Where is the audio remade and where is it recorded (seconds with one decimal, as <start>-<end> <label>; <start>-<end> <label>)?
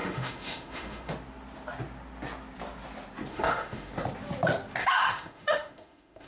0.0-1.1 remade; 1.1-3.3 recorded; 3.3-3.9 remade; 3.9-4.8 recorded; 4.8-6.3 remade